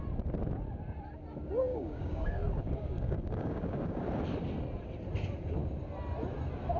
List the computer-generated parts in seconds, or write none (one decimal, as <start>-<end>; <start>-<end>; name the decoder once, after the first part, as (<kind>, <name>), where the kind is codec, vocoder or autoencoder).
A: 1.7-4.0 (codec, DAC)